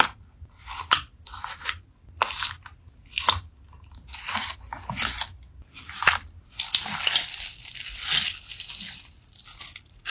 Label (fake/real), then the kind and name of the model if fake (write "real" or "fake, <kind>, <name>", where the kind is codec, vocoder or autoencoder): real